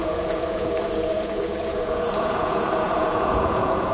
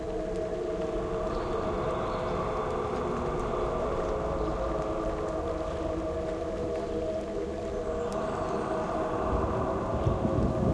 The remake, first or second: first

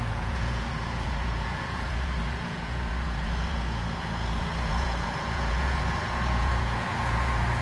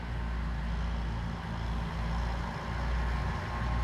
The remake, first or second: first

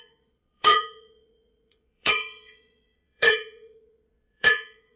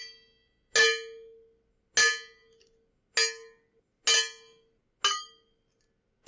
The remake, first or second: first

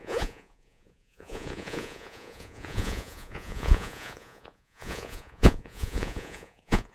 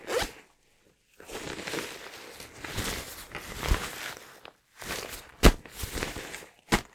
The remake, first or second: first